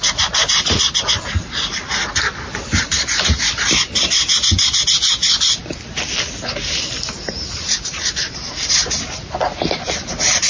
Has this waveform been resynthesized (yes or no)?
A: no